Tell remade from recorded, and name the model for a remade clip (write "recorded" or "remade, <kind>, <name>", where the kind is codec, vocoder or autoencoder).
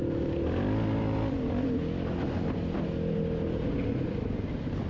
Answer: recorded